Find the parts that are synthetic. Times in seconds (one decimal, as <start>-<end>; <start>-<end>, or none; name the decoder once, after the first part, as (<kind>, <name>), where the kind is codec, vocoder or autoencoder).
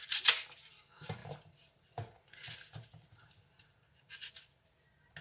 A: none